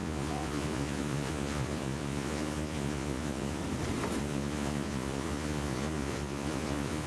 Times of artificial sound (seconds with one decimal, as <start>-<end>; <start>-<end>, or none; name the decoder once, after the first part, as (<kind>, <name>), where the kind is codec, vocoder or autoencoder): 0.0-3.6 (vocoder, Vocos); 4.2-7.1